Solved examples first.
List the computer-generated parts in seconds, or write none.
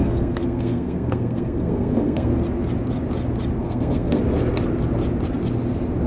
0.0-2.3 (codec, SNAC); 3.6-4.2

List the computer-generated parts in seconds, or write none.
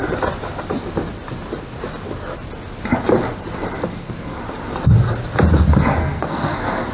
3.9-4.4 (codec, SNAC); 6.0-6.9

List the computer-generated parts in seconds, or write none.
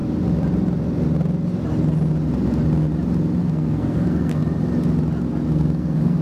3.4-4.4 (codec, SNAC); 5.5-6.2